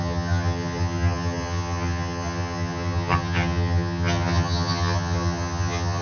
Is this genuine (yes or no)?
no